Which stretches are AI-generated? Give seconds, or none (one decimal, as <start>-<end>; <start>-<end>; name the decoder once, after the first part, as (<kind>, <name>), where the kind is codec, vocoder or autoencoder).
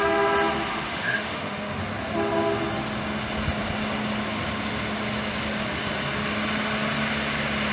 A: 0.7-1.8 (autoencoder, DAC-VAE)